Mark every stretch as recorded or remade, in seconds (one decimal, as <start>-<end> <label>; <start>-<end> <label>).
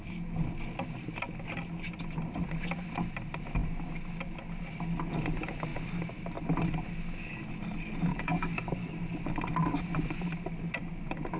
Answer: 0.0-8.1 recorded; 8.1-8.9 remade; 8.9-11.4 recorded